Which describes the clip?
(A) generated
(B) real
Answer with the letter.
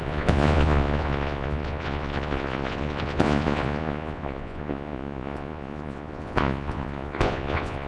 A